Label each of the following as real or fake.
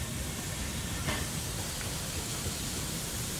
real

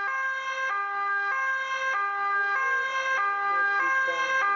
real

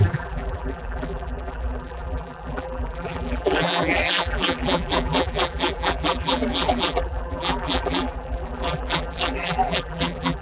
fake